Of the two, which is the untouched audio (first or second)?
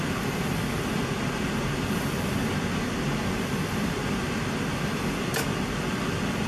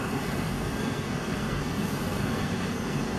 first